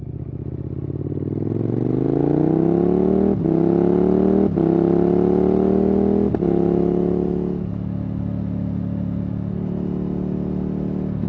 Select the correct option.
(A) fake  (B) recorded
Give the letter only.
B